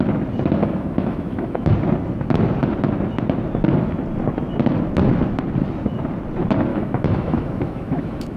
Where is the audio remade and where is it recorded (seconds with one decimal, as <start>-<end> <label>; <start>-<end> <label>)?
0.0-0.6 recorded; 0.6-1.7 remade; 1.7-6.7 recorded; 6.7-8.4 remade